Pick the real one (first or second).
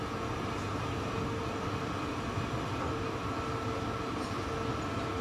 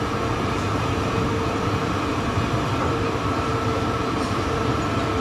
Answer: first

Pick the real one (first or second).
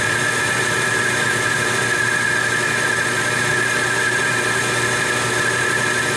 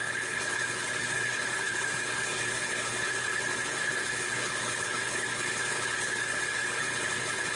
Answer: first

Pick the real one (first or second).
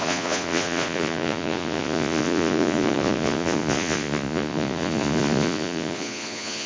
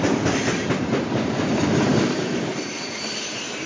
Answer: second